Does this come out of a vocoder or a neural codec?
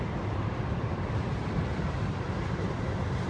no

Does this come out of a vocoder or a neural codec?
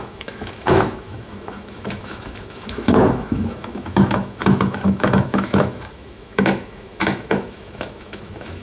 yes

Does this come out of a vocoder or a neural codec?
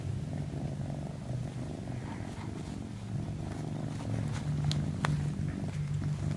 no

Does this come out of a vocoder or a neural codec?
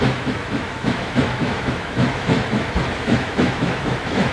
yes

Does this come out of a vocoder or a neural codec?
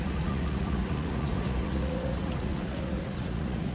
yes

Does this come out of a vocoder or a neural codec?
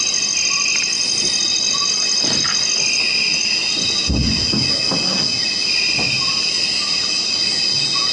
no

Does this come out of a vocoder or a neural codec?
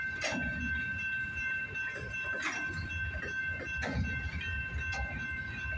no